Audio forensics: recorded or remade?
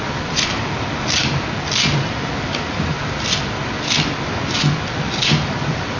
recorded